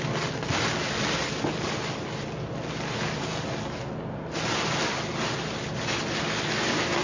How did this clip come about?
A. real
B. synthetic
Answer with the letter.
A